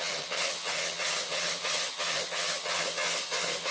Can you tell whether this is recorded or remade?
remade